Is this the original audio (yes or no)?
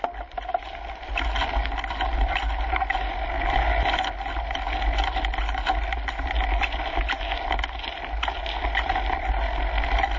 yes